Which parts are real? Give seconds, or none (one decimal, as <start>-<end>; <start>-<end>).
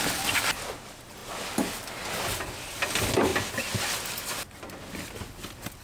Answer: 0.0-5.8